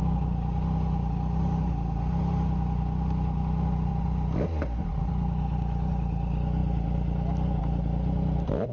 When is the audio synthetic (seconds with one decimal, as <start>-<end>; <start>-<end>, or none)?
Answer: 6.6-7.6